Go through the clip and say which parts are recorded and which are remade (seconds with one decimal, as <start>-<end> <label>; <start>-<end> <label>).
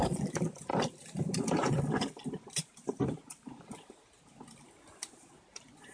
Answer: 0.0-5.9 recorded